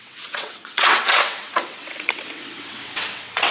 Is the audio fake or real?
fake